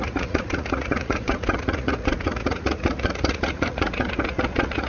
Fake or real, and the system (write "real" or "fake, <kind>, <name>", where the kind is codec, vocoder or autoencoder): fake, vocoder, Vocos